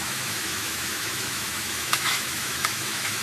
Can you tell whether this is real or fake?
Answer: fake